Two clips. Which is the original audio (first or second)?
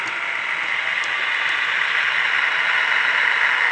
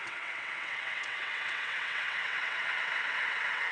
first